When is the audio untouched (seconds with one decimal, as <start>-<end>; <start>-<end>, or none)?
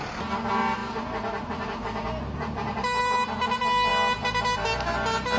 0.0-5.4